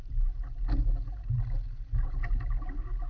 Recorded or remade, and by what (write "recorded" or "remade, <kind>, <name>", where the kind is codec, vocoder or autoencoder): recorded